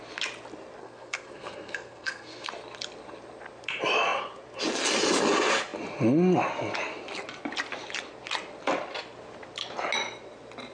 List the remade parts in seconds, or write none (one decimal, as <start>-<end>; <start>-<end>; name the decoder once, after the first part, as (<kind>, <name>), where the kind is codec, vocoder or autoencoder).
0.8-2.5 (codec, SNAC)